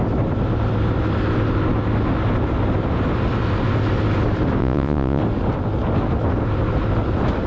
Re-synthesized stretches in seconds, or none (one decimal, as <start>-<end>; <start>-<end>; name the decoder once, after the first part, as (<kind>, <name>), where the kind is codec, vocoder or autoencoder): 4.6-5.2 (vocoder, Vocos)